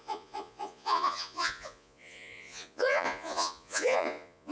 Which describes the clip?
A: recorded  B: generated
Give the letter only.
B